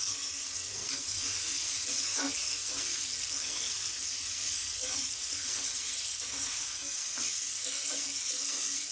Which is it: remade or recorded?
remade